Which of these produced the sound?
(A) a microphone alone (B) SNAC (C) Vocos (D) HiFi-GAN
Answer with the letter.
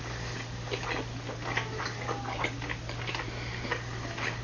A